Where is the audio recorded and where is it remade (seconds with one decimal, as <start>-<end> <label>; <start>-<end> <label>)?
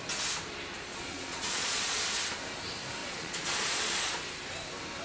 0.0-0.9 recorded; 0.9-2.0 remade; 2.0-3.0 recorded; 3.0-4.2 remade; 4.2-5.0 recorded